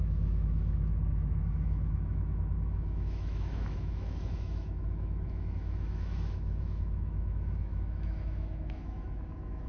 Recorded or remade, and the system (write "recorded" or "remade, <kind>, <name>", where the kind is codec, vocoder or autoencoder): remade, autoencoder, DAC-VAE